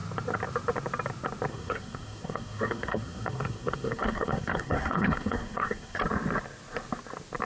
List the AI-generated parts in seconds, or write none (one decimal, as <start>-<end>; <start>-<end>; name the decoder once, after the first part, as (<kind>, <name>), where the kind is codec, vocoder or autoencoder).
1.5-6.0 (codec, SNAC)